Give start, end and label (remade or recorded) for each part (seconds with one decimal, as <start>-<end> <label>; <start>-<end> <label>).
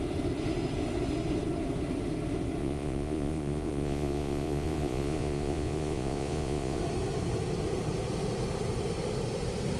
0.0-2.6 recorded; 2.6-6.8 remade; 6.8-9.8 recorded